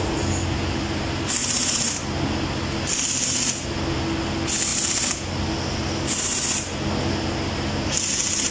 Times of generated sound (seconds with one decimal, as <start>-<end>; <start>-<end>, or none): none